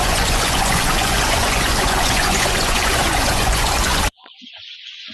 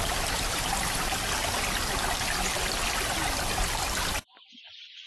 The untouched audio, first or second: second